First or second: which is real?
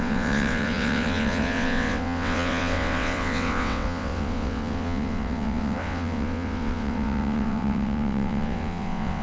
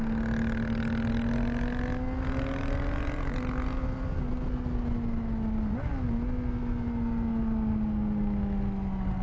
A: second